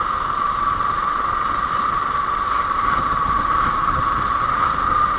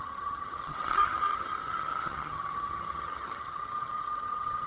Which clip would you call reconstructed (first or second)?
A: second